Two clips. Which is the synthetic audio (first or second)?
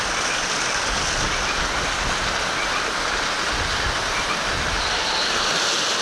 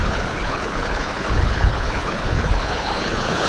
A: second